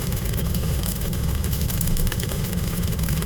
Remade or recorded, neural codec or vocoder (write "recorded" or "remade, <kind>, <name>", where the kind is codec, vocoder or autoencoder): remade, autoencoder, DAC-VAE